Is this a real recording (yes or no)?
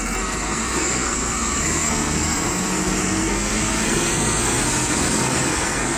no